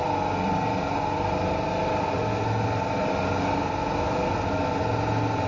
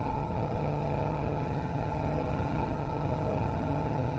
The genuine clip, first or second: first